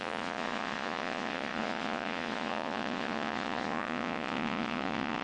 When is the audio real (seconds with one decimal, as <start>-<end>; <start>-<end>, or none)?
none